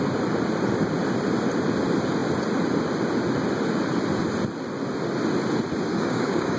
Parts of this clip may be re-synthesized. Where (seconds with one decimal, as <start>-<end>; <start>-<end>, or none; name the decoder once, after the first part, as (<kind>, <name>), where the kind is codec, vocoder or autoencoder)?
5.9-6.6 (codec, DAC)